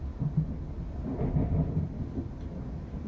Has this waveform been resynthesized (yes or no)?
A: no